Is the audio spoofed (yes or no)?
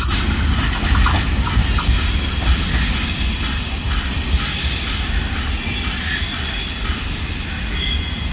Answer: no